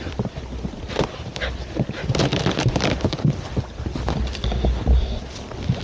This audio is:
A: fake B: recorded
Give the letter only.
B